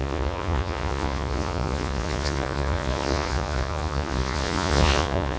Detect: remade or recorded remade